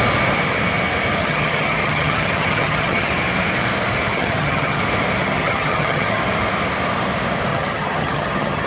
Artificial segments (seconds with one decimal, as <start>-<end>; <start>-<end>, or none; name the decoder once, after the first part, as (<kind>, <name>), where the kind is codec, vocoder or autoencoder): 1.2-3.1 (vocoder, HiFi-GAN); 4.1-4.8; 5.2-6.2; 7.5-8.7